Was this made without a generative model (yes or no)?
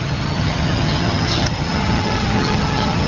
no